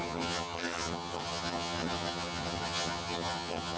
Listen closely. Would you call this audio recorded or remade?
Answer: remade